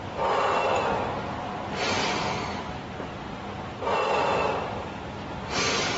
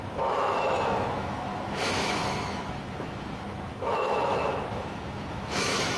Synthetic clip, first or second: second